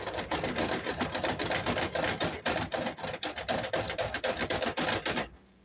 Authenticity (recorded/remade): recorded